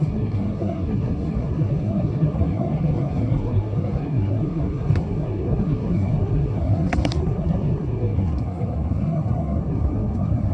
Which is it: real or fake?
fake